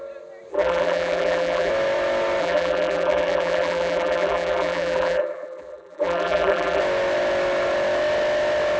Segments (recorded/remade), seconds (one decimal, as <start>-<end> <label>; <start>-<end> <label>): 0.0-0.5 recorded; 0.5-1.7 remade; 1.7-2.4 recorded; 2.4-6.8 remade; 6.8-8.8 recorded